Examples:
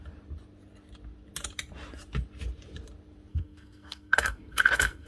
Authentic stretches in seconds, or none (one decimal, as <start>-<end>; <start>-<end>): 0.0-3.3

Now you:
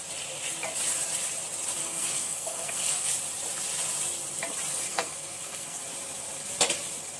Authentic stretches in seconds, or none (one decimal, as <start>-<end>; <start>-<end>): 0.0-1.8; 3.1-4.9; 5.8-7.2

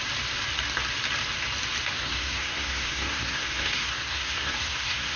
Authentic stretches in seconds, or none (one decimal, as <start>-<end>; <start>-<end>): 0.0-1.9

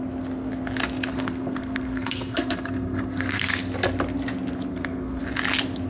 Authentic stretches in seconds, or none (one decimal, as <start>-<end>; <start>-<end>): 0.0-1.1; 3.5-4.7; 5.2-5.9